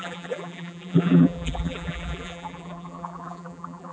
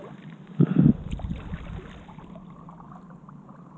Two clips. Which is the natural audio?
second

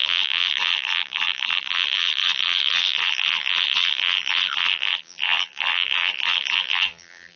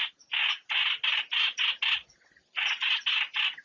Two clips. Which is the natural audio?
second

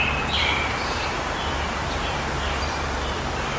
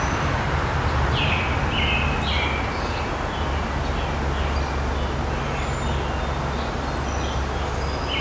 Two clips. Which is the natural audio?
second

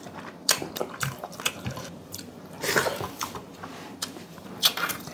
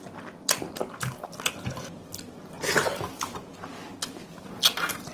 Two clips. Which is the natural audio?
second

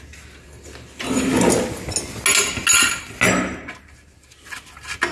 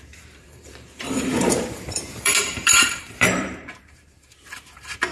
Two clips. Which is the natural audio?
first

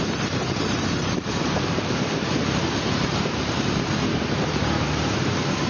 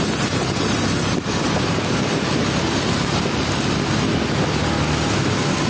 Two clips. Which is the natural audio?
second